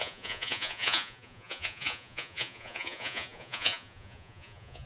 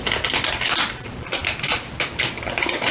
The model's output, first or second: first